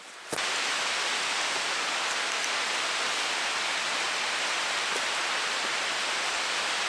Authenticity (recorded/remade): recorded